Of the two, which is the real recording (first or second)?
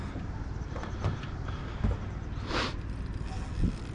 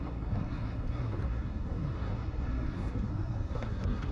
first